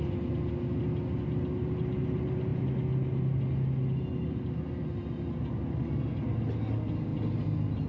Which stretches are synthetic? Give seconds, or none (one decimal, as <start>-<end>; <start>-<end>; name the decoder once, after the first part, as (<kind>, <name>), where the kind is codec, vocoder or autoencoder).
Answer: none